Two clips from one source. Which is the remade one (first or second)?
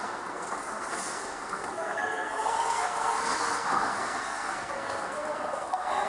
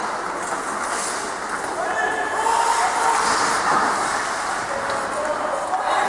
first